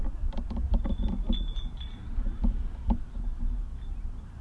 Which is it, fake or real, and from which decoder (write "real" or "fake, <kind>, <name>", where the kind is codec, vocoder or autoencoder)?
real